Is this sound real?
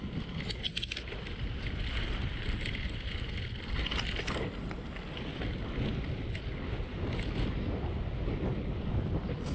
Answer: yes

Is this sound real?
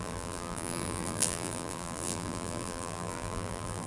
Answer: no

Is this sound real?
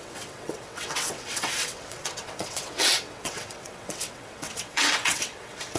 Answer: no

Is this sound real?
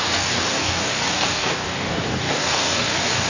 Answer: no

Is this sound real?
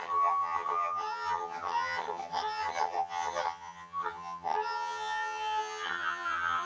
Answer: no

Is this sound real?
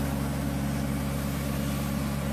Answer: yes